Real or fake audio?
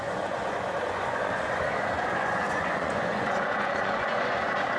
fake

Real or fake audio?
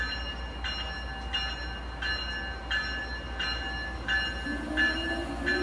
real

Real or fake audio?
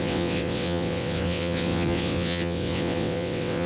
fake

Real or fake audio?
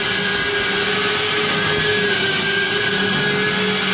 real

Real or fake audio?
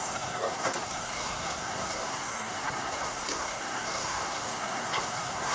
fake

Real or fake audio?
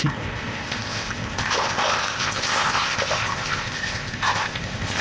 fake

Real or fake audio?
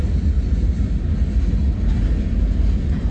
real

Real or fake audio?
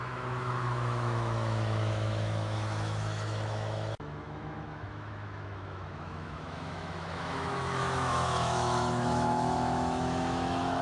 fake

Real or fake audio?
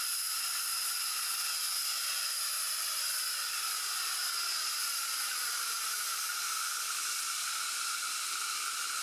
real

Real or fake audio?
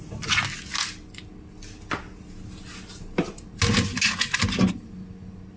real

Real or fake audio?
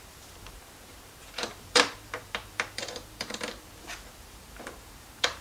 fake